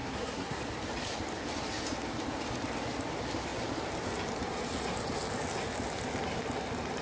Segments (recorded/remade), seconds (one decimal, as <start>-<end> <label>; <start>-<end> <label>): 0.0-0.6 remade; 0.6-7.0 recorded